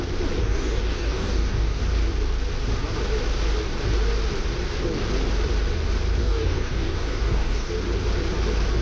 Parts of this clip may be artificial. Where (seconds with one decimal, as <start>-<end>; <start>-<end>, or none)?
0.4-1.8; 6.2-7.7